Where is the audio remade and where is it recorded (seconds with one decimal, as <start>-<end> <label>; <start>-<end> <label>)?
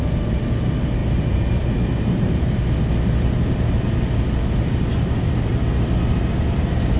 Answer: 0.0-1.0 recorded; 1.0-2.6 remade; 2.6-7.0 recorded